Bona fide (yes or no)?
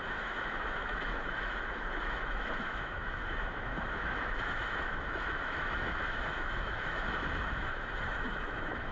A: no